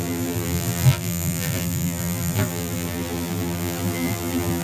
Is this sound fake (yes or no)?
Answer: yes